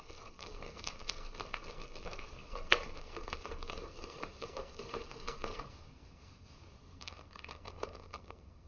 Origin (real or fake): fake